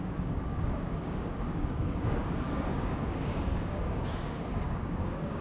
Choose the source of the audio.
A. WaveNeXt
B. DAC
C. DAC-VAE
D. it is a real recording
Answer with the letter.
B